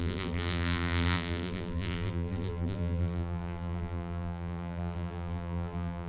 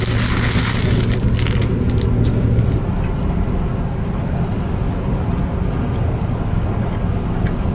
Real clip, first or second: second